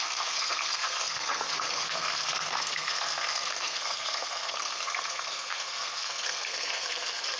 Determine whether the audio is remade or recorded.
remade